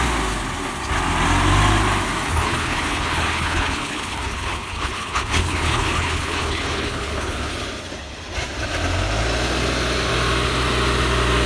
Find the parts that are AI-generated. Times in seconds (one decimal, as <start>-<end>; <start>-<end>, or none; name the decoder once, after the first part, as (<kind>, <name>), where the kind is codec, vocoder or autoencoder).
2.3-7.5 (codec, HILCodec)